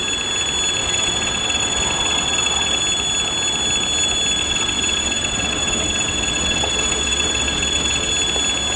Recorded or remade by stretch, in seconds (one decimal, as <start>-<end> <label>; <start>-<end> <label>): 0.0-0.8 recorded; 0.8-2.8 remade; 2.8-4.4 recorded; 4.4-8.1 remade; 8.1-8.8 recorded